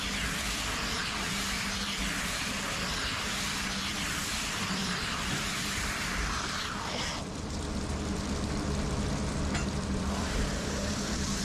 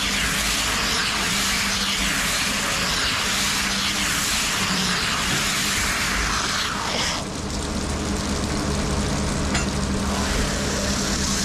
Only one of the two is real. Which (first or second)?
second